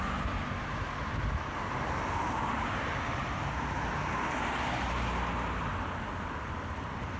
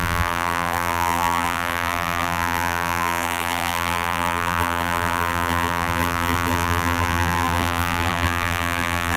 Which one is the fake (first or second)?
second